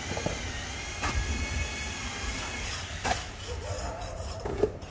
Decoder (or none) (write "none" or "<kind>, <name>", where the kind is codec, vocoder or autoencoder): none